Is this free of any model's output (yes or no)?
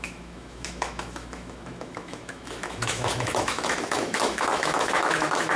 no